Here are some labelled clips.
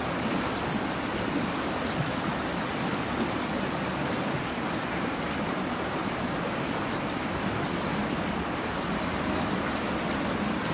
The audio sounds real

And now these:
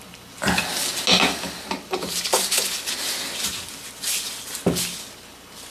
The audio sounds real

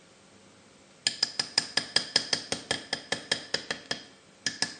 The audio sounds real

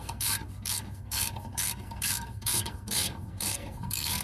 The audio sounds fake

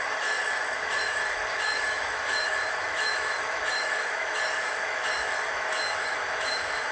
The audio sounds fake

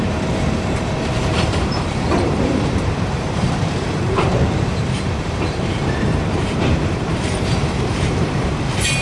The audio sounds fake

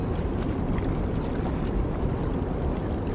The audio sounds real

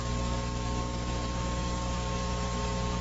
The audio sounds fake